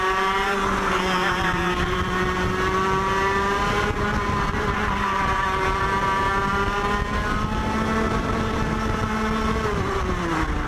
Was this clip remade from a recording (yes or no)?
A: no